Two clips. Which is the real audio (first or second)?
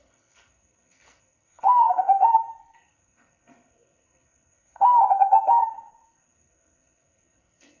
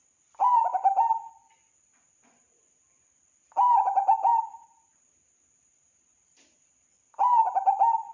second